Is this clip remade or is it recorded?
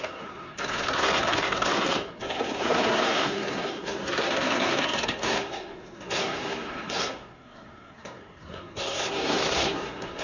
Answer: remade